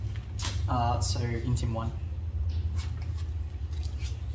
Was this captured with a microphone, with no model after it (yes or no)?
yes